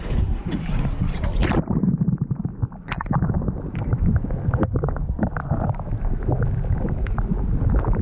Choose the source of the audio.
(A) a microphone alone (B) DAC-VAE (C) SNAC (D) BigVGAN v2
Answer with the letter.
D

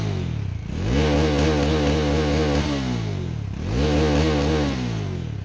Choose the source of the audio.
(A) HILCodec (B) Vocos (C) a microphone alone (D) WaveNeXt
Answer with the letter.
C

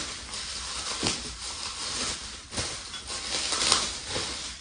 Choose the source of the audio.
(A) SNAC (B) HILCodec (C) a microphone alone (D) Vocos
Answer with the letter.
C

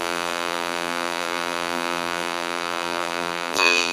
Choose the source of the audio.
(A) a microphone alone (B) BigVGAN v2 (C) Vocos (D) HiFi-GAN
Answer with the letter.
B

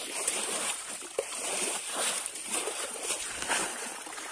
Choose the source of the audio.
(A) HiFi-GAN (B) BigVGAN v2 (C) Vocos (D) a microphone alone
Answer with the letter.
B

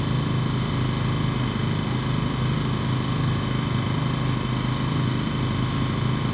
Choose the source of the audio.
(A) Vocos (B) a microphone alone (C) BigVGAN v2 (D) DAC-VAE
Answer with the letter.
B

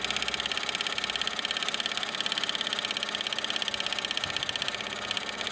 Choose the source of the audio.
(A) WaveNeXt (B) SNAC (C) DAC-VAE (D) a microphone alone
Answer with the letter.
D